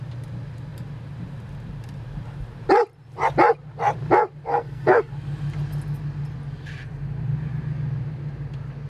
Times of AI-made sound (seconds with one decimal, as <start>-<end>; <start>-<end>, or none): 4.5-5.1